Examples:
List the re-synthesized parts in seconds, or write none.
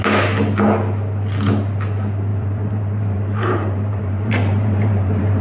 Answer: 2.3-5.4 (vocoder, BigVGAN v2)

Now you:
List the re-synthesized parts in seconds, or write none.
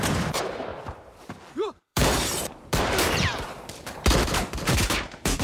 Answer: 0.0-0.7 (vocoder, BigVGAN v2); 1.5-5.4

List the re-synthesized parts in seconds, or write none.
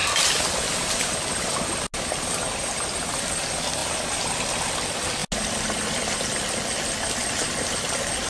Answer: none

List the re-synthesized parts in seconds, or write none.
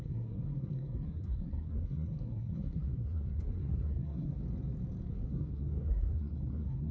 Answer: 0.0-4.4 (codec, SNAC); 5.1-6.9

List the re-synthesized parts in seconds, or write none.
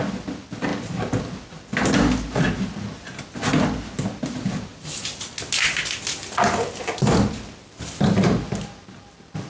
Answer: none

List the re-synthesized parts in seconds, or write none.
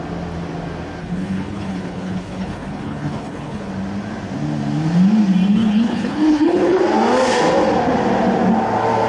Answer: 1.0-3.7 (codec, HILCodec); 5.5-6.8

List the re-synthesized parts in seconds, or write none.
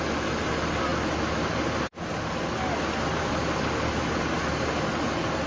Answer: none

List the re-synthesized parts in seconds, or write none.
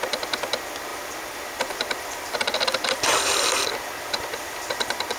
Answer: 0.9-3.0 (vocoder, BigVGAN v2)